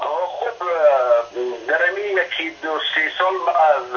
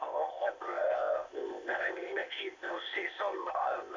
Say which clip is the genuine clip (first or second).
first